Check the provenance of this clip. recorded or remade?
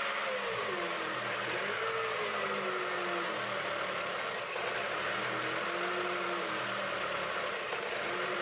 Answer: recorded